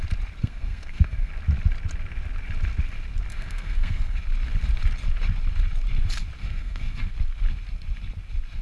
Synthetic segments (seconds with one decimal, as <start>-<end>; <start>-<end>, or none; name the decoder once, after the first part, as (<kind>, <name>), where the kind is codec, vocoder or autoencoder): 0.4-1.3 (codec, SNAC); 3.3-4.2; 6.4-7.1

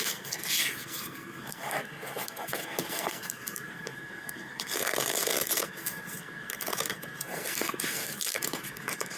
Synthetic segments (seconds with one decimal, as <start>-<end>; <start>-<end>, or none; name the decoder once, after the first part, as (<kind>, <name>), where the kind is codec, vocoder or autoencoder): 0.0-9.2 (codec, SNAC)

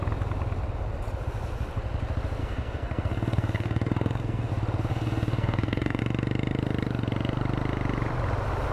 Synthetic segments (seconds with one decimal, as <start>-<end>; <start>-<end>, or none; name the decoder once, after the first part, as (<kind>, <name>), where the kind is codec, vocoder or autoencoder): 2.4-4.5 (codec, SNAC); 4.9-6.0

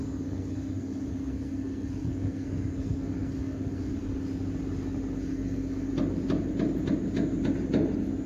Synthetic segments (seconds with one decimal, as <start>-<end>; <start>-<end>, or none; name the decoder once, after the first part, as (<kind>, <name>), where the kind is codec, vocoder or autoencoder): 0.0-4.0 (codec, SNAC); 5.3-5.9

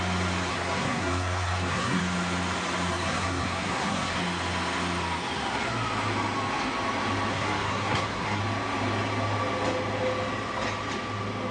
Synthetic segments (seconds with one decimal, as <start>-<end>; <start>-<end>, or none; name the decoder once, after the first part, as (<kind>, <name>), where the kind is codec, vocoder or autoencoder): 0.5-2.0 (codec, SNAC); 2.9-4.2; 7.3-8.4

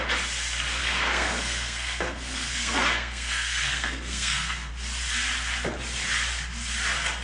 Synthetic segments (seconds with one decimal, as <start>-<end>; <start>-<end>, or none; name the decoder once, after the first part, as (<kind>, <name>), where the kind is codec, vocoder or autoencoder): 0.8-4.7 (codec, SNAC)

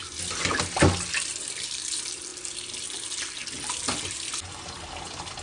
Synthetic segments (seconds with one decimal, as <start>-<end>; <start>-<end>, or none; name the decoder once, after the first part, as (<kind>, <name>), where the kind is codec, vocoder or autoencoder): none